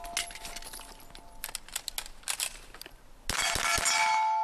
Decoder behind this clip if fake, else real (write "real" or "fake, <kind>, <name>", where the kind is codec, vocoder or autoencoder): real